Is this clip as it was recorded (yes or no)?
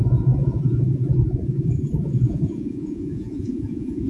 no